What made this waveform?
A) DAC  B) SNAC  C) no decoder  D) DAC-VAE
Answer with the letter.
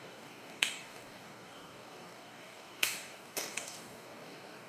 A